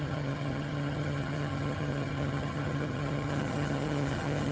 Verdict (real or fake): fake